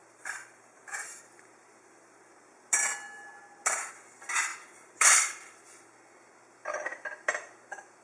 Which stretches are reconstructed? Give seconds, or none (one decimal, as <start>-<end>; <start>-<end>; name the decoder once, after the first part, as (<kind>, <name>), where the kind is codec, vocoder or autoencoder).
0.0-2.3 (vocoder, BigVGAN v2); 4.5-5.4